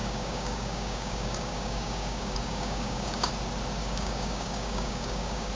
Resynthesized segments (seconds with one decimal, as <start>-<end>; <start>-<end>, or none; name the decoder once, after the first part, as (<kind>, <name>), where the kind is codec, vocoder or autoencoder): 0.0-3.3 (codec, DAC); 3.8-5.5